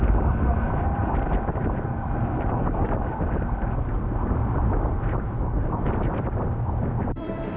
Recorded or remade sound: remade